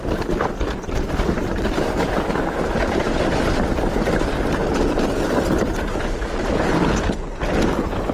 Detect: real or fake real